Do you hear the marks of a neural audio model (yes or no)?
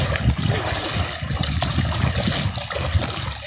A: no